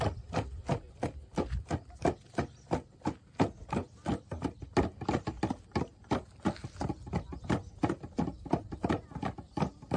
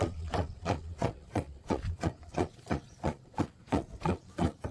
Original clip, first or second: first